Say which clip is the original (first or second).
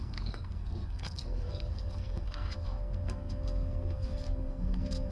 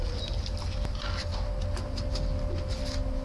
second